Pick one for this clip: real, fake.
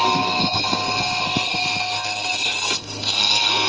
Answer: fake